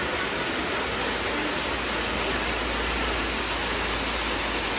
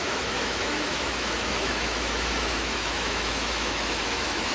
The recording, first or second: first